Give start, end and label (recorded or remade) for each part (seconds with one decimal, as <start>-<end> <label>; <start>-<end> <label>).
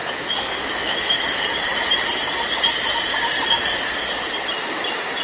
0.0-1.2 remade; 1.2-5.2 recorded